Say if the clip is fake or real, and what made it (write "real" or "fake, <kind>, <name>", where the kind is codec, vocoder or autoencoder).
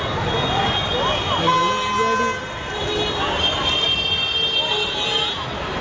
real